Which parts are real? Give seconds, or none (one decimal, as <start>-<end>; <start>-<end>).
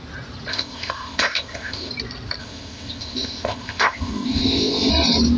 0.0-0.5; 1.9-2.4; 4.9-5.4